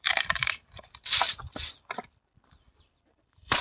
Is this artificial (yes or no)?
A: yes